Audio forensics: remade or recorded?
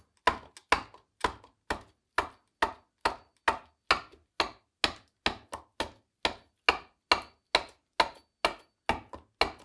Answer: recorded